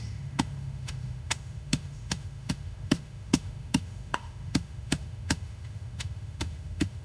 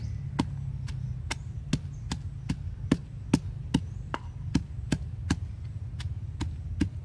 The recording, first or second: second